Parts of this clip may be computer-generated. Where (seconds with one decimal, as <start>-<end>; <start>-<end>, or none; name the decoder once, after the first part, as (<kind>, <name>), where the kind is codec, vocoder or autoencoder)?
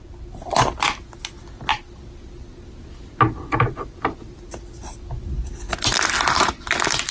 none